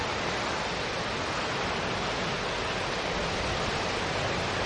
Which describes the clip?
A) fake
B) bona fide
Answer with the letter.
B